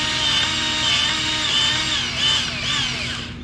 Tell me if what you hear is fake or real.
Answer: real